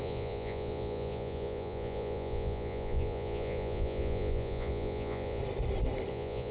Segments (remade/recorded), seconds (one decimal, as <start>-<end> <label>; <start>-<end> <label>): 0.0-5.4 remade; 5.4-6.1 recorded; 6.1-6.5 remade